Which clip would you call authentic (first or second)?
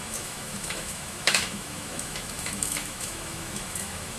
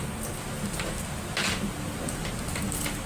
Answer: second